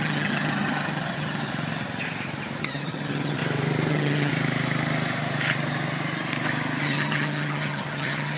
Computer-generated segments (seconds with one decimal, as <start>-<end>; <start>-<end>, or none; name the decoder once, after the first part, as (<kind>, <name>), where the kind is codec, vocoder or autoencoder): 0.0-1.5 (vocoder, HiFi-GAN); 2.6-3.4; 3.9-4.3; 6.8-8.4